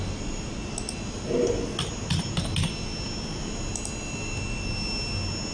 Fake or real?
real